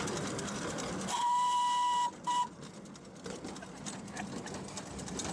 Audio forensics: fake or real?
real